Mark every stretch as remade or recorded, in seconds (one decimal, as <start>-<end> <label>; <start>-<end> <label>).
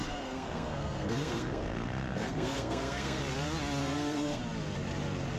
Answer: 0.0-3.2 remade; 3.2-3.8 recorded; 3.8-4.4 remade; 4.4-5.4 recorded